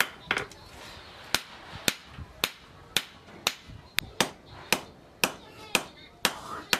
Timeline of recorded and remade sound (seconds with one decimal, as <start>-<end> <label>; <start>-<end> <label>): 0.0-6.8 recorded